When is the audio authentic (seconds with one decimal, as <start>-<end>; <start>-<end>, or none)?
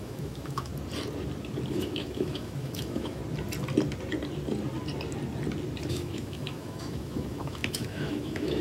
0.7-1.7; 3.2-5.9